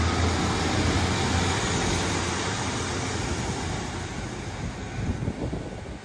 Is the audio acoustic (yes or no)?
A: yes